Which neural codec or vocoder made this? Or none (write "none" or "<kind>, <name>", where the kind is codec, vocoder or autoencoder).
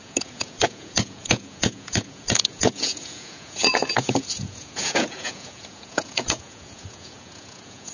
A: vocoder, Vocos